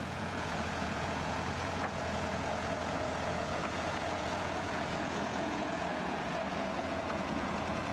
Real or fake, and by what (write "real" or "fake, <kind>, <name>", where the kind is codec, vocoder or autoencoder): fake, vocoder, Vocos